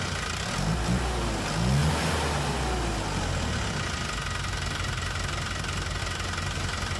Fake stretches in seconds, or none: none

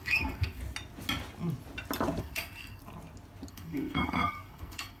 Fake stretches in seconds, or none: 0.0-0.6 (codec, SNAC); 2.2-2.8; 3.5-5.0

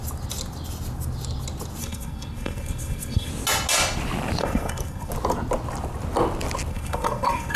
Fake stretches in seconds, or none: 1.8-3.3 (codec, SNAC); 4.4-5.1; 6.7-7.6

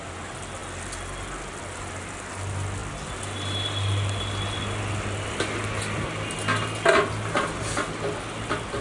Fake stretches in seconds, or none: none

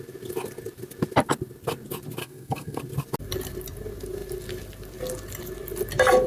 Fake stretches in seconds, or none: 2.2-2.8 (codec, SNAC)

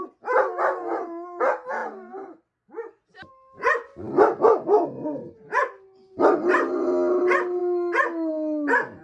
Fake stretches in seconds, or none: none

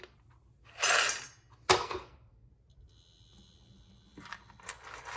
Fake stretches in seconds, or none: 1.8-2.5 (codec, SNAC)

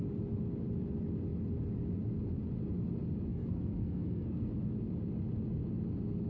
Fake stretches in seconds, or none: 3.3-4.5 (codec, SNAC)